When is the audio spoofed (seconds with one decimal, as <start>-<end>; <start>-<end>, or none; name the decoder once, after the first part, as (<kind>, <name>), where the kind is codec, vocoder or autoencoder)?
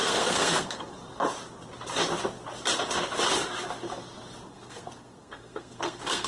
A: 0.0-0.9 (codec, SNAC); 4.5-6.3